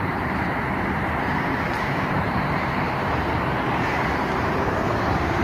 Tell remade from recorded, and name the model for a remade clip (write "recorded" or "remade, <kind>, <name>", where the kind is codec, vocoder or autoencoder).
remade, vocoder, BigVGAN v2